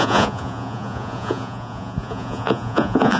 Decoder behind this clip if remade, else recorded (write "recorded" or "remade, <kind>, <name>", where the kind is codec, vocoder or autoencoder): remade, vocoder, Vocos